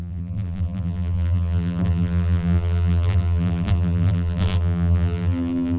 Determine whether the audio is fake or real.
fake